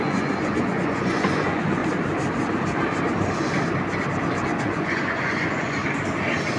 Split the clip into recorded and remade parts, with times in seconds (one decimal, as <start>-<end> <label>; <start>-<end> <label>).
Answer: 0.0-1.8 remade; 1.8-4.6 recorded; 4.6-5.8 remade; 5.8-6.6 recorded

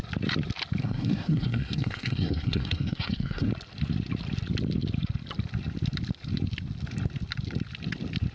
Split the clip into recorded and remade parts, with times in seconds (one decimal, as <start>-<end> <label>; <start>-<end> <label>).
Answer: 0.0-0.8 recorded; 0.8-3.5 remade; 3.5-8.3 recorded